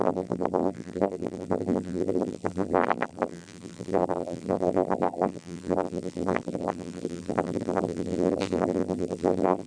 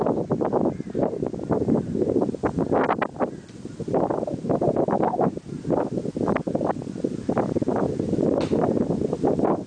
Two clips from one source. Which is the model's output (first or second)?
first